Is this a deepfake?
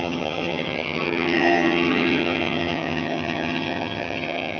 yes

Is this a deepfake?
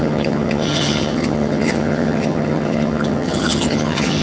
yes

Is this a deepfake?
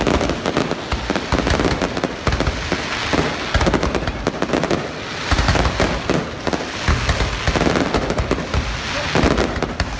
no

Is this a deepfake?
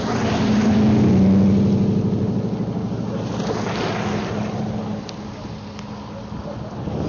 no